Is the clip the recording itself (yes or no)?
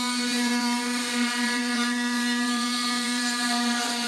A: no